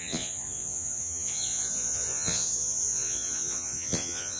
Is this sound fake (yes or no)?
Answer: yes